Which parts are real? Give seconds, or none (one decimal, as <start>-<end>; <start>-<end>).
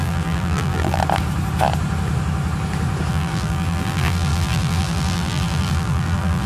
1.0-3.1